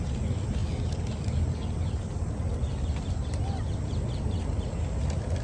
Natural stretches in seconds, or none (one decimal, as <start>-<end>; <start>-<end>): 0.0-5.4